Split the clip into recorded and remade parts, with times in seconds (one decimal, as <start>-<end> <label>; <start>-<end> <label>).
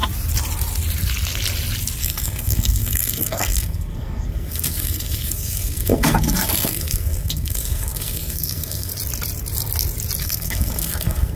0.0-2.0 recorded; 2.0-8.9 remade; 8.9-10.2 recorded; 10.2-11.4 remade